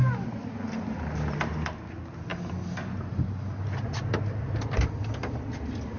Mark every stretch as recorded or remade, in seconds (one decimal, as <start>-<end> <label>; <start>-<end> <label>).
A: 0.0-6.0 recorded